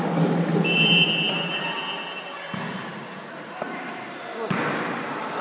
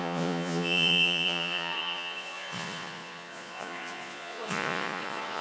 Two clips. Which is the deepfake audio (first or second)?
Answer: second